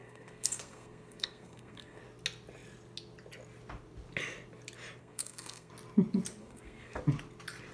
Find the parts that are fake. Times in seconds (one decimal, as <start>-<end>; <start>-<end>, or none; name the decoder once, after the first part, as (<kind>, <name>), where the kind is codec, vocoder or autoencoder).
0.0-2.0 (codec, SNAC); 5.0-5.7; 6.4-7.0